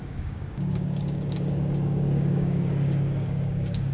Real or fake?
fake